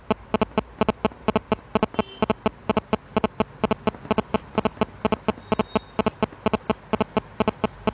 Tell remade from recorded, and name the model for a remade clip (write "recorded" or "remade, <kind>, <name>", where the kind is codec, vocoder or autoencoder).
recorded